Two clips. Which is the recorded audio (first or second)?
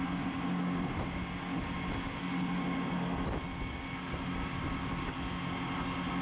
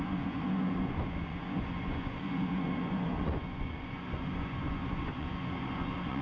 first